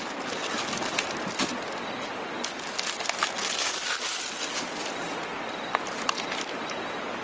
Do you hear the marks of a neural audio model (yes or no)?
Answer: no